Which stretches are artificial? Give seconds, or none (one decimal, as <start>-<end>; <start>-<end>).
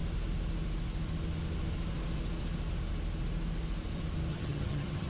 4.3-5.1